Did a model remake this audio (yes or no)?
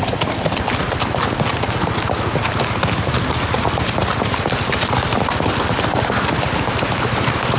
no